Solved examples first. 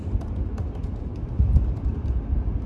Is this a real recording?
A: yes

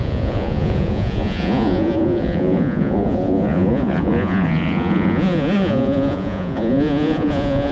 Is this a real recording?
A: no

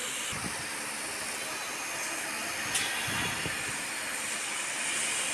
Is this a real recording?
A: yes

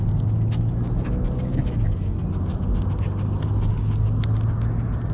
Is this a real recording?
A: yes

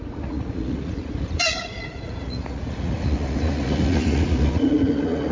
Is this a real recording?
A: no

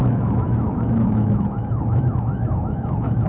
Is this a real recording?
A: no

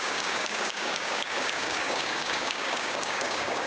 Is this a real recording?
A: no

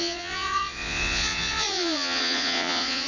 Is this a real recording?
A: no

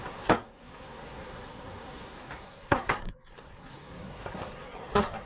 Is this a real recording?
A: no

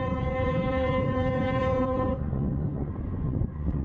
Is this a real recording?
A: no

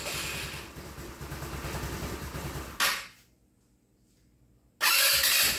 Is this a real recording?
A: yes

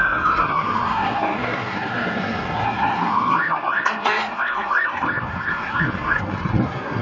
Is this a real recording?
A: no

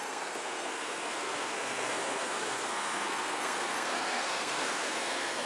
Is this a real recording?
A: no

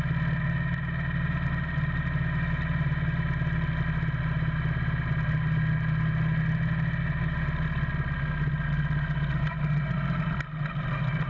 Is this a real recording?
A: yes